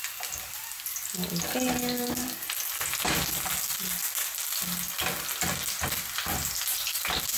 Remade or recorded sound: recorded